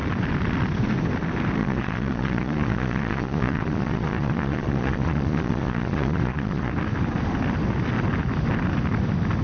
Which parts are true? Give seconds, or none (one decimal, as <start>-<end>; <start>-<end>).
0.0-1.6; 6.7-9.4